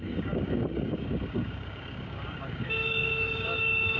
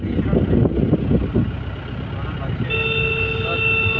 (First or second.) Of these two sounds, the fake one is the first